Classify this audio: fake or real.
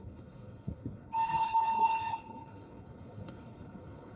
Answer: fake